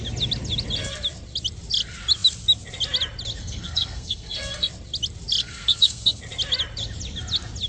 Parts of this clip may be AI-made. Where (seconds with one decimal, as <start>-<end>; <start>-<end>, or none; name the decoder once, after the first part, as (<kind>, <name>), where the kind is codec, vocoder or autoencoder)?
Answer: 3.4-4.7 (codec, SNAC); 5.4-6.2